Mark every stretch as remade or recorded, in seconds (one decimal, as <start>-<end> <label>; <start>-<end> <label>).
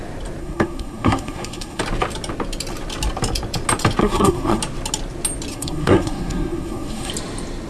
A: 0.0-0.4 recorded; 0.4-1.8 remade; 1.8-4.0 recorded; 4.0-4.6 remade; 4.6-5.5 recorded; 5.5-7.1 remade; 7.1-7.7 recorded